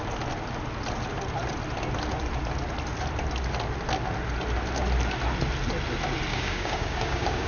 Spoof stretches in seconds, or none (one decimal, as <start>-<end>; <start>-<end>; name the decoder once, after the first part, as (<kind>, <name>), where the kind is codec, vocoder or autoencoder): 6.3-7.5 (codec, DAC)